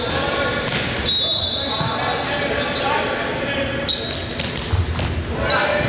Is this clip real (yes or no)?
yes